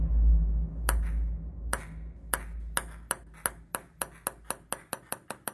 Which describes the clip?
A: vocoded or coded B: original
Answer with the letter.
B